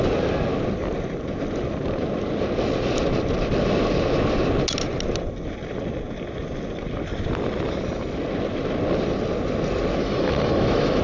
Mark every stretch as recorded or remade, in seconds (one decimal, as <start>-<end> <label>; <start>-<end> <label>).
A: 0.0-10.0 recorded; 10.0-11.0 remade